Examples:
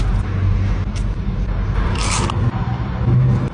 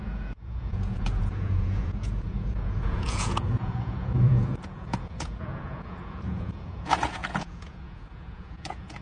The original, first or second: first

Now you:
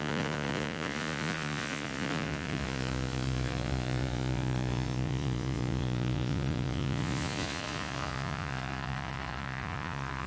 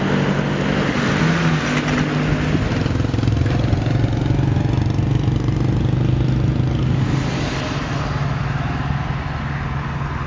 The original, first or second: second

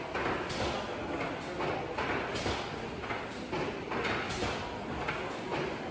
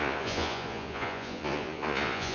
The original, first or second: first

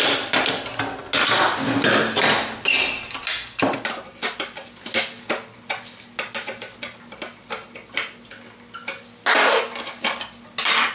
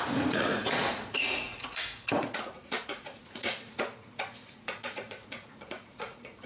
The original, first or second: first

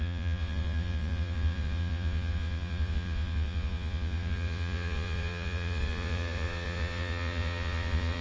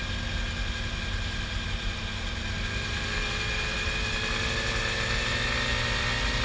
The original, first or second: second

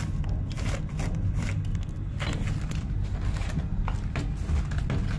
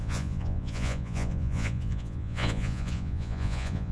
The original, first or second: first